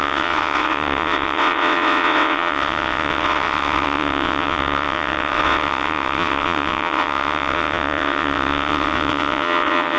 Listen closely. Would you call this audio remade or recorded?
remade